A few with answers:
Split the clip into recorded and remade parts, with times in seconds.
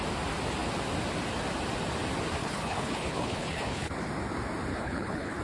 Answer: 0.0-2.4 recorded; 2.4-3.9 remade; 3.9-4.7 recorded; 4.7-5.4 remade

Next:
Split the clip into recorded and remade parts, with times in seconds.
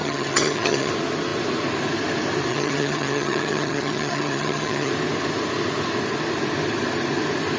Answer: 0.0-0.9 remade; 0.9-2.5 recorded; 2.5-4.9 remade; 4.9-7.6 recorded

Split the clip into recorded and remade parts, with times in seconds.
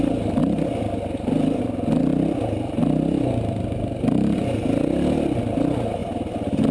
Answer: 0.0-6.7 recorded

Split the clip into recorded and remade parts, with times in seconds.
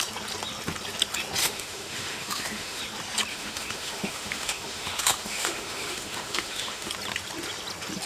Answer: 0.0-1.4 recorded; 1.4-2.8 remade; 2.8-3.3 recorded; 3.3-6.9 remade; 6.9-8.1 recorded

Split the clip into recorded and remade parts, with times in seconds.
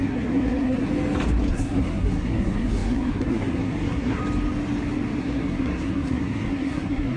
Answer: 0.0-0.9 remade; 0.9-1.5 recorded; 1.5-4.2 remade; 4.2-5.2 recorded; 5.2-7.2 remade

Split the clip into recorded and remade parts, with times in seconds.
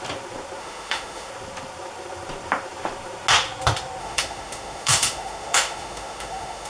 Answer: 0.0-0.6 recorded; 0.6-1.3 remade; 1.3-4.0 recorded; 4.0-6.7 remade